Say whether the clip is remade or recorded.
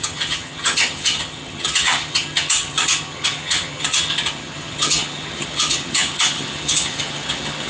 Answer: remade